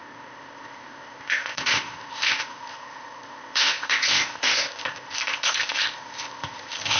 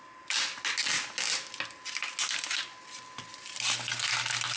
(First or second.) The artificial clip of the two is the first